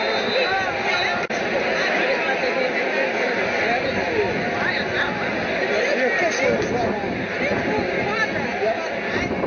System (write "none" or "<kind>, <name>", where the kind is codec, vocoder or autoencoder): none